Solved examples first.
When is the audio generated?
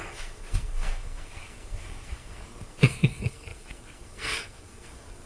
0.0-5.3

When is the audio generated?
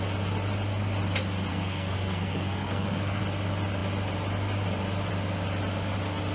1.5-3.2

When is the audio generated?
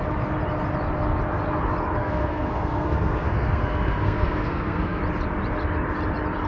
2.0-5.0